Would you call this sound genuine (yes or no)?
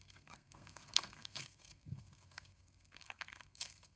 no